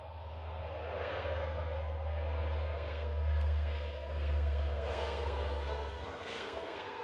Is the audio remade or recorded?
remade